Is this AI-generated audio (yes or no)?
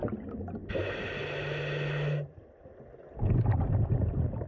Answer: no